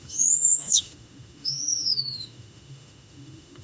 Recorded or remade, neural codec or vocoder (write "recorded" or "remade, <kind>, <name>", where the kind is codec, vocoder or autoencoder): remade, autoencoder, DAC-VAE